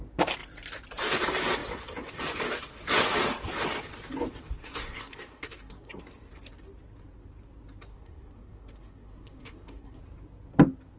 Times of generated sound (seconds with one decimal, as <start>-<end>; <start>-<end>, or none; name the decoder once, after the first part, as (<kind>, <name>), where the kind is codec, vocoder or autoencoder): 4.6-6.0 (codec, SNAC); 7.9-10.0